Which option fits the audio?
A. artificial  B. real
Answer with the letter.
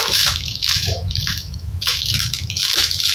A